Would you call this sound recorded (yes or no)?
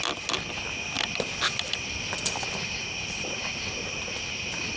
yes